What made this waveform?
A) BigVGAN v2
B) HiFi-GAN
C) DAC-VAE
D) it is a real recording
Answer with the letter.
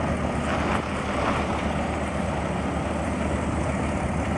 D